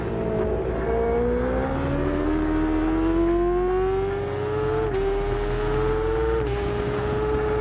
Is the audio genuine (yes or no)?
yes